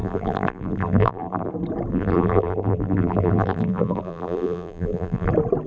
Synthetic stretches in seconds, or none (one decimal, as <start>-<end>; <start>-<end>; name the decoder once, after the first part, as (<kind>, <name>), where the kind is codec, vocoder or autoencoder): 0.0-1.5 (vocoder, BigVGAN v2); 1.9-5.3